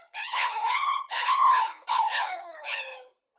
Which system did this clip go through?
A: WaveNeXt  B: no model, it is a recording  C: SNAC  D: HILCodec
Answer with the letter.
D